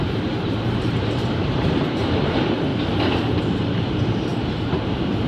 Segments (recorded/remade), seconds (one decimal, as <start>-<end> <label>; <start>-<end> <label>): 0.0-2.7 remade; 2.7-3.4 recorded; 3.4-4.3 remade; 4.3-5.3 recorded